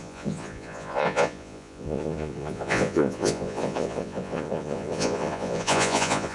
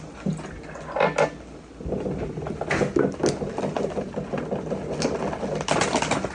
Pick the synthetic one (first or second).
first